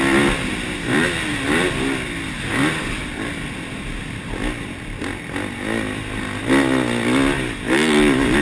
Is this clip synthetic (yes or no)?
no